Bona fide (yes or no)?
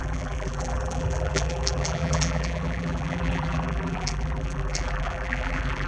no